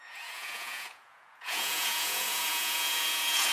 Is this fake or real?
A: fake